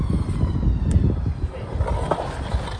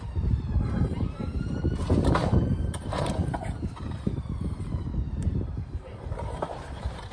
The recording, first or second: first